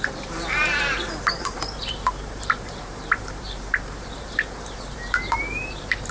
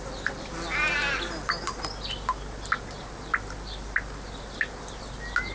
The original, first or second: second